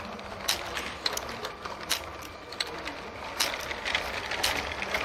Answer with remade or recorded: recorded